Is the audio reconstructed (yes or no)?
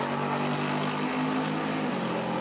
no